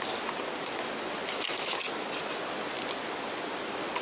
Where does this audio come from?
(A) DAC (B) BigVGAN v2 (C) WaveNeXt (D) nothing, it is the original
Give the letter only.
D